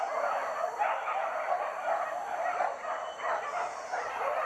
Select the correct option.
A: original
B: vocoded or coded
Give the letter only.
A